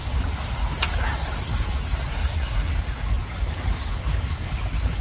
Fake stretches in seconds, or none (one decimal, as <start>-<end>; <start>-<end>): 2.1-2.7